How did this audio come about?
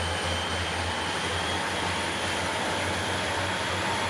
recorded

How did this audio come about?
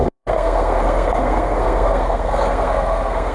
remade